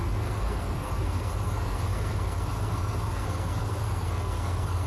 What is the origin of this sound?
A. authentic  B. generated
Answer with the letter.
B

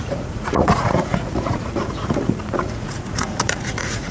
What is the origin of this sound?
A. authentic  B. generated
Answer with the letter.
B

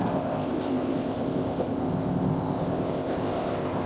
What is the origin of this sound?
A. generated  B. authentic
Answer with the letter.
A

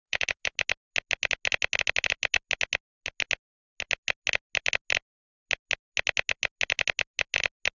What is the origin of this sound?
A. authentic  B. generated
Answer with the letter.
A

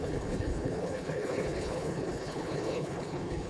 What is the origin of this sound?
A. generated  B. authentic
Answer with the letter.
A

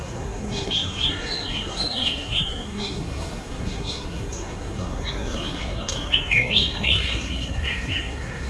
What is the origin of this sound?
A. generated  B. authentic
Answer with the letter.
A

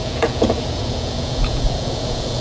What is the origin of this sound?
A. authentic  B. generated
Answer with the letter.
B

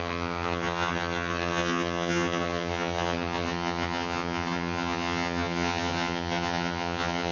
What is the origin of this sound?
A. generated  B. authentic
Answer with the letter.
A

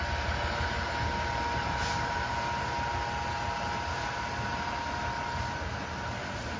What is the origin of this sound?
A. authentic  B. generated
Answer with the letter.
A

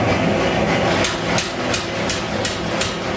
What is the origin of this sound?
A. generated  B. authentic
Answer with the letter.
B